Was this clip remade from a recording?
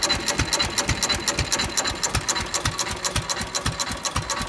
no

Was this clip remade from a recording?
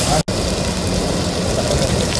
no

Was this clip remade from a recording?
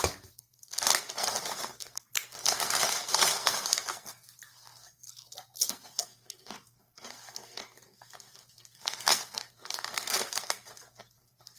yes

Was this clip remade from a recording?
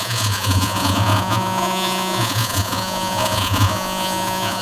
yes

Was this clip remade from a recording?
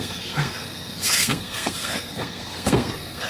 yes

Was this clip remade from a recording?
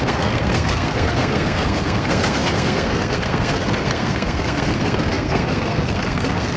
yes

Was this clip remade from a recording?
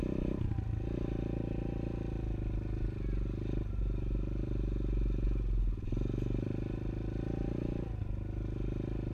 no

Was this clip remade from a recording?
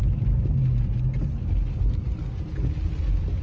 no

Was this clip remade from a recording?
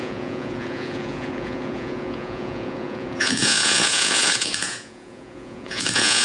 yes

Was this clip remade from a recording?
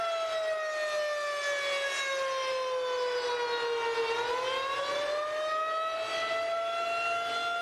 no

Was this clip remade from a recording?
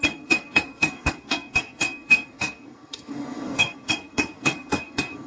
yes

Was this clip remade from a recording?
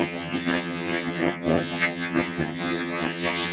yes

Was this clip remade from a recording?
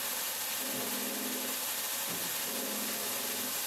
no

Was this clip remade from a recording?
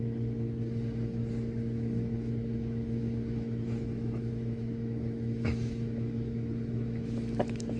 yes